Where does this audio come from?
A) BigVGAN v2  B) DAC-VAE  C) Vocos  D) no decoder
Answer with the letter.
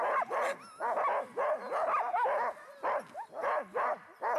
D